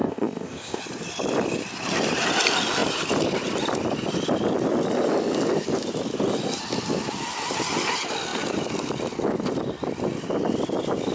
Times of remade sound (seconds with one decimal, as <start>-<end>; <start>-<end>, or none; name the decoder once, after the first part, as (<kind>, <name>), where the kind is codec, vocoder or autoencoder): 0.0-0.8 (codec, ZipCodec)